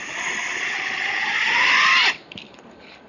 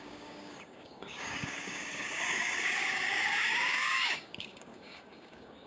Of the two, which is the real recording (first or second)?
first